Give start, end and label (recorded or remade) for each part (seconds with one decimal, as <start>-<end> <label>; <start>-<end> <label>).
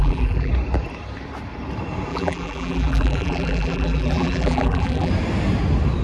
0.0-0.5 remade; 0.5-2.1 recorded; 2.1-5.1 remade; 5.1-6.0 recorded